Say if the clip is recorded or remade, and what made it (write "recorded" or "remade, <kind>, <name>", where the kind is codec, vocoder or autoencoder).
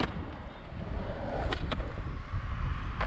recorded